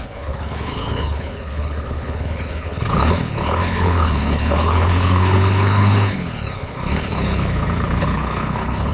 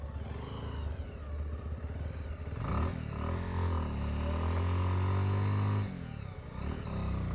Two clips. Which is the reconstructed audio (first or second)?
first